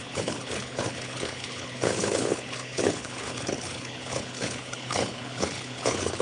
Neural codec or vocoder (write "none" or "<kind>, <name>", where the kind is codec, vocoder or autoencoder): codec, HILCodec